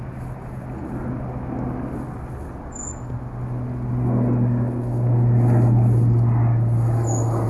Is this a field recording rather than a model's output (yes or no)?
yes